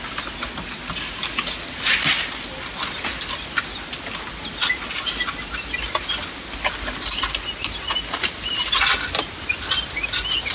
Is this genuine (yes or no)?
yes